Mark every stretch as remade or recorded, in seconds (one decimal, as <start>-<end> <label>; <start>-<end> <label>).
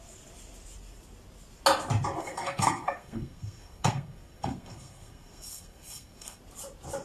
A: 0.0-2.2 recorded; 2.2-6.4 remade; 6.4-7.0 recorded